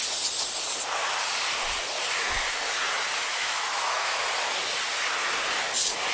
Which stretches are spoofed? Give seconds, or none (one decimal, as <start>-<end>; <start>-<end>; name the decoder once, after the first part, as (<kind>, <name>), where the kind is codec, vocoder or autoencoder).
3.3-4.2 (autoencoder, DAC-VAE)